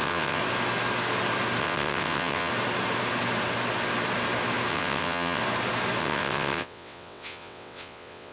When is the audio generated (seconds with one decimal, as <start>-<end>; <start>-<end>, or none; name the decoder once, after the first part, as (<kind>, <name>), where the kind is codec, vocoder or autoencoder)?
0.0-0.4 (vocoder, WaveNeXt); 1.6-2.5; 4.7-5.4; 6.0-8.3